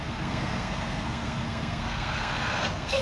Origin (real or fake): fake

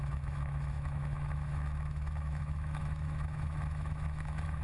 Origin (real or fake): fake